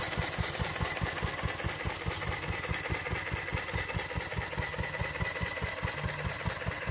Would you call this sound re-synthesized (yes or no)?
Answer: no